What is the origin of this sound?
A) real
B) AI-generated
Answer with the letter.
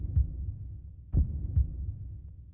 A